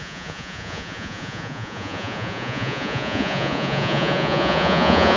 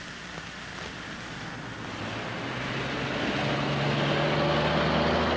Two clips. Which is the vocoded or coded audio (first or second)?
first